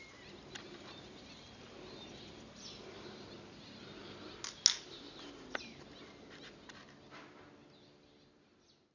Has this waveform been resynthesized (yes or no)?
no